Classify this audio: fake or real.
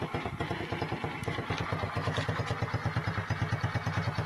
real